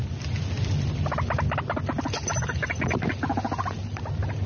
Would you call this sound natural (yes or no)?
yes